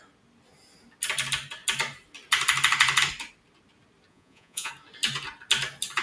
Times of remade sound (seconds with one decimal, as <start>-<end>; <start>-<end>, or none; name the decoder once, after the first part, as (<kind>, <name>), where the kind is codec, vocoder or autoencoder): 4.1-4.7 (vocoder, Vocos)